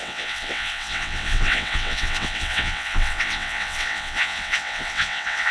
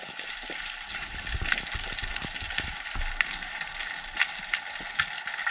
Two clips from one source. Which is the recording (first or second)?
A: second